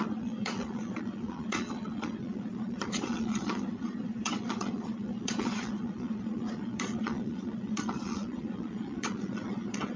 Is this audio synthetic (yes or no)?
yes